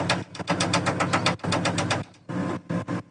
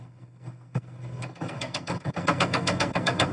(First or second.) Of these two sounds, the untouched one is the first